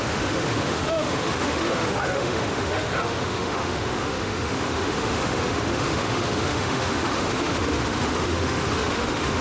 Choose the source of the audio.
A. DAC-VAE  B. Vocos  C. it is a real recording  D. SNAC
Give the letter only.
A